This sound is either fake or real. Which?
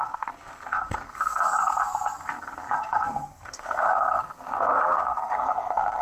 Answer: fake